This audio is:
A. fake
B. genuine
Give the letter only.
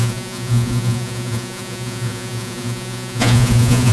A